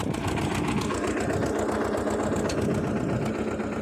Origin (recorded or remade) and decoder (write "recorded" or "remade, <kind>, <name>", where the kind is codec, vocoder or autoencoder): recorded